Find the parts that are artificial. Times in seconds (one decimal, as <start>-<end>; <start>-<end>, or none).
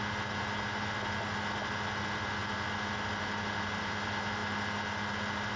none